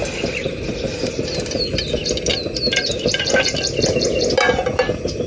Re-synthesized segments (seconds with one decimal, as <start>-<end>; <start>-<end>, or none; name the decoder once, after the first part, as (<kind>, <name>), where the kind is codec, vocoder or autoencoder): none